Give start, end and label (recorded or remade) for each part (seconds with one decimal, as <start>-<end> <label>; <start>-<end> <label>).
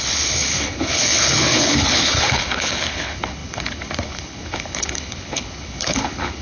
0.0-6.4 remade